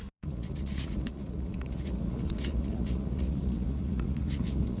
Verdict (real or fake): fake